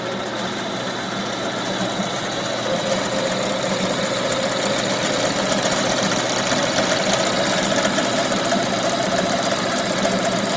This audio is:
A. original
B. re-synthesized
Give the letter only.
A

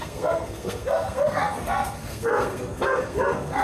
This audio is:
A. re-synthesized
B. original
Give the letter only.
A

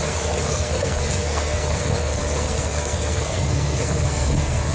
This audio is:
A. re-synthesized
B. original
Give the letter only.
A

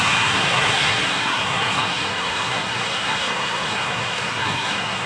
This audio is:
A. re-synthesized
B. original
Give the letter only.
A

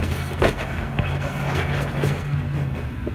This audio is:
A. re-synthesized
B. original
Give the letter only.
A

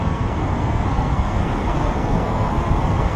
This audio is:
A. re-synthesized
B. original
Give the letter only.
A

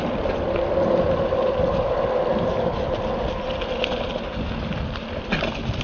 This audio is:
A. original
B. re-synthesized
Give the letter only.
A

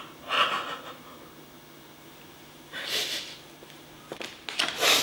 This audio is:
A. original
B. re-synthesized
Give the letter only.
A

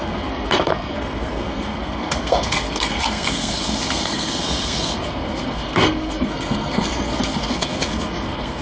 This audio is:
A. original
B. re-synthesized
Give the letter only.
B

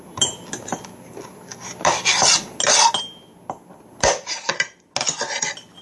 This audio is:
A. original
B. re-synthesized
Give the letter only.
A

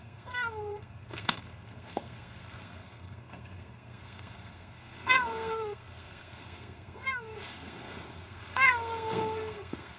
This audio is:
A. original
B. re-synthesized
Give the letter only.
B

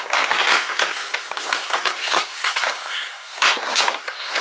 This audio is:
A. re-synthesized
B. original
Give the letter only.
A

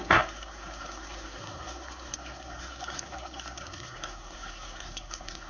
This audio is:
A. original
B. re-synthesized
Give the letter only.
B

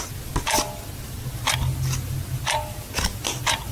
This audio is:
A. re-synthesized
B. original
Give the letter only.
B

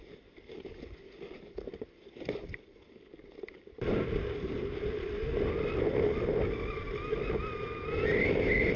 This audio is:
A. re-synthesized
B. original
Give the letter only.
B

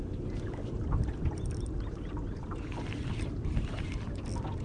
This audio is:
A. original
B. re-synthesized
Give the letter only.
A